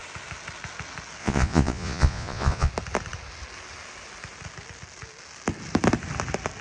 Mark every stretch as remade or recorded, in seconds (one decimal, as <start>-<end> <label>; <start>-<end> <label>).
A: 0.0-1.2 recorded; 1.2-2.7 remade; 2.7-6.6 recorded